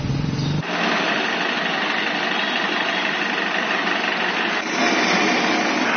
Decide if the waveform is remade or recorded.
recorded